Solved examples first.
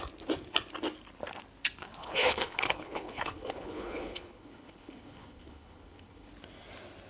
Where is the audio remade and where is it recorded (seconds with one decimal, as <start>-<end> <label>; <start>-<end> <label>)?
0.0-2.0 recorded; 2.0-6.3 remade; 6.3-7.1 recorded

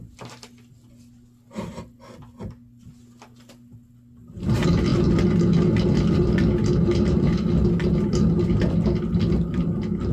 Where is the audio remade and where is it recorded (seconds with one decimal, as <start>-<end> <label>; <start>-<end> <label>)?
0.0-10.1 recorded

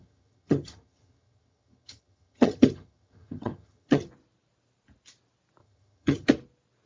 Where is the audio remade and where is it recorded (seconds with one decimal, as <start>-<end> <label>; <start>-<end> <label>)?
0.0-4.1 remade; 4.1-5.6 recorded; 5.6-6.3 remade; 6.3-6.9 recorded

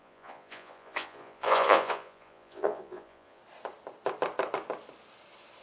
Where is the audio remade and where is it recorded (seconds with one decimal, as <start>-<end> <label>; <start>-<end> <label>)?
0.0-3.4 remade; 3.4-5.6 recorded

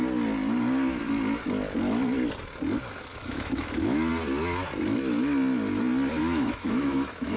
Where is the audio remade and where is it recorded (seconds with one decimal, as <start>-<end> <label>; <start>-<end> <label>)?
0.0-3.1 recorded; 3.1-4.1 remade; 4.1-6.2 recorded; 6.2-7.4 remade